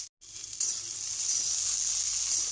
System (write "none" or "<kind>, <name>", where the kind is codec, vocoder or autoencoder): none